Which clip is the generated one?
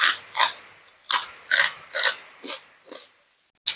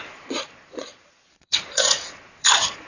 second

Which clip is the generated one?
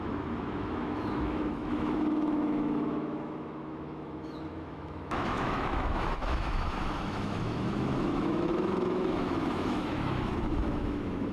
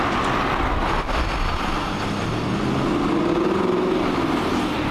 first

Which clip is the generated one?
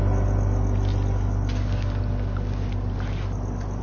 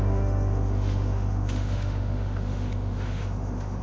second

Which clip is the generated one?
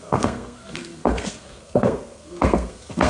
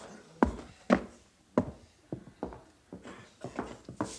first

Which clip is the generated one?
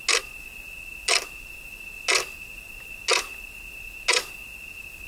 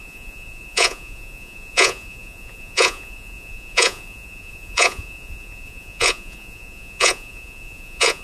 second